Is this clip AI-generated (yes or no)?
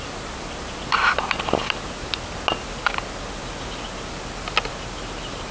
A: no